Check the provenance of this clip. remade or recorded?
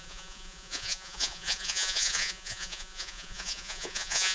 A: remade